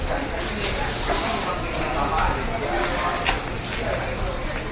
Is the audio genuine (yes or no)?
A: yes